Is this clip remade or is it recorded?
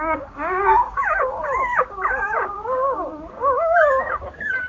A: remade